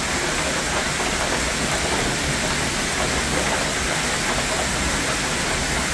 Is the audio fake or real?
real